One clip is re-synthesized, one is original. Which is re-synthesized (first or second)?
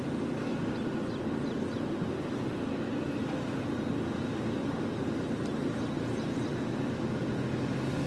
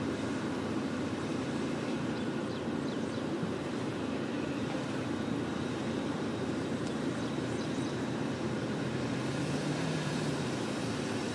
second